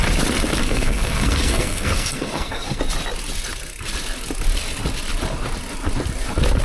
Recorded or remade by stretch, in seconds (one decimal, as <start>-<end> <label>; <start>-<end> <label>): 0.0-0.6 recorded; 0.6-2.8 remade; 2.8-6.6 recorded